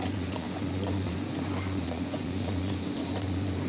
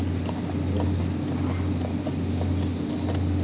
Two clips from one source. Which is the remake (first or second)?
first